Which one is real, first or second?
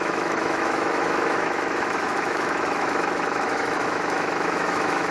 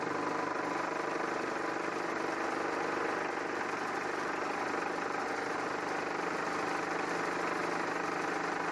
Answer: second